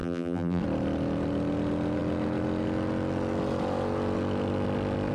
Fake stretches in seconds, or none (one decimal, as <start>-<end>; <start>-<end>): 0.0-0.6